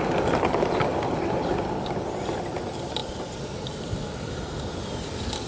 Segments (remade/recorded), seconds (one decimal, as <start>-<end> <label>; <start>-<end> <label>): 0.0-5.5 recorded